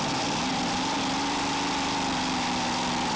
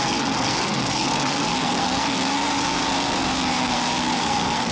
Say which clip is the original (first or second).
first